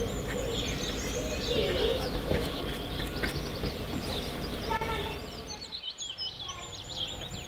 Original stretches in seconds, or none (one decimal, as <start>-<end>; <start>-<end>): 0.0-1.9; 2.6-7.5